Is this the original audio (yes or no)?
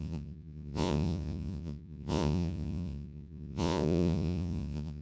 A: no